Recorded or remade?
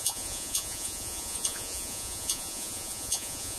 remade